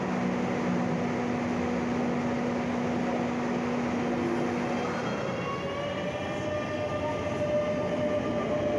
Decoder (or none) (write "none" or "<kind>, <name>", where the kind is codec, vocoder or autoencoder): none